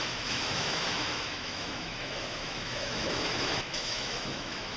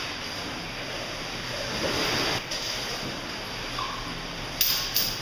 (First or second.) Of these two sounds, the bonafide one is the second